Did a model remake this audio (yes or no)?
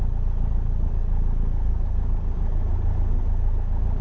no